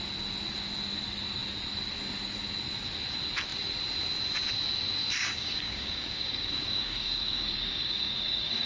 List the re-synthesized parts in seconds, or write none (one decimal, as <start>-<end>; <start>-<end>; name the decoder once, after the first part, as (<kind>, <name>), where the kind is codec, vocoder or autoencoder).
5.2-8.7 (codec, DAC)